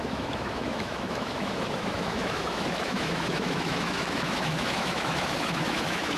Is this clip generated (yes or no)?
yes